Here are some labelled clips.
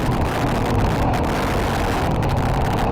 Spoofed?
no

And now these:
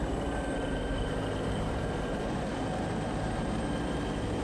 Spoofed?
yes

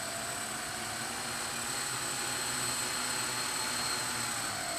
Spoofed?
no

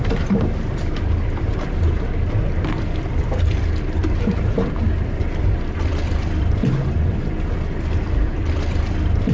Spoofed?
yes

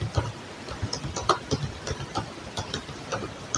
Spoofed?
no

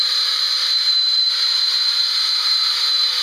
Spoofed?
yes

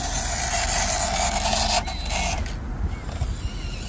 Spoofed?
no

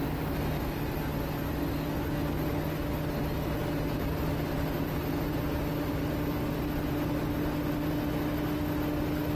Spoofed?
no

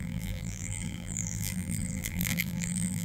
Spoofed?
yes